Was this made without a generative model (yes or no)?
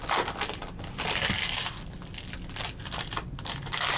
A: yes